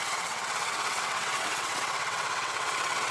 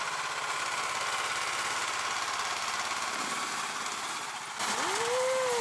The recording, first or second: second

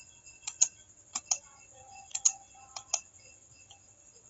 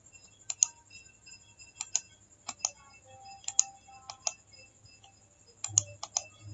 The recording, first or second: second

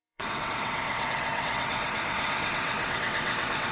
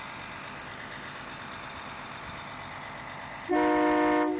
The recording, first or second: second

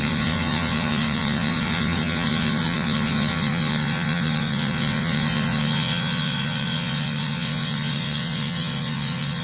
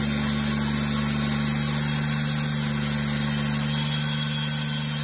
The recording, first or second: second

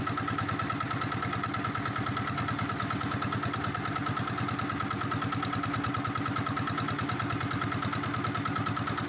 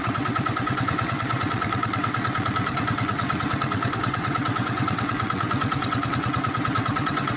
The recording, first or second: first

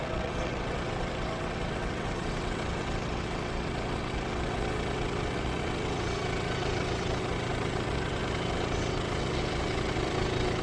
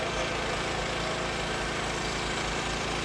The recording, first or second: second